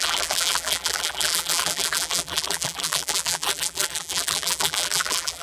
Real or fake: fake